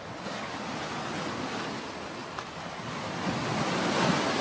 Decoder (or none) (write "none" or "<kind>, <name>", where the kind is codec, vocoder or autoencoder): none